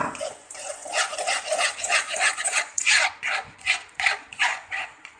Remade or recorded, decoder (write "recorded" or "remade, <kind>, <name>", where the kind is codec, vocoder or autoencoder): remade, vocoder, Vocos